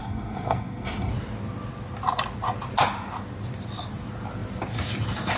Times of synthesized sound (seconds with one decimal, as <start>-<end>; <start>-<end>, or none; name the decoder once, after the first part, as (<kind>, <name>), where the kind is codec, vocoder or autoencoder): 0.0-1.1 (codec, SNAC)